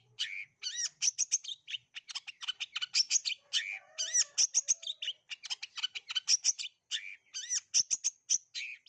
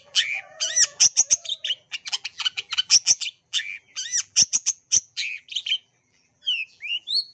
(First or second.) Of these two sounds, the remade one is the second